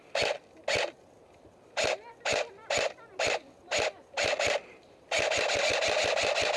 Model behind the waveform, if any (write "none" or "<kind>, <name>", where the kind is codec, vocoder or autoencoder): none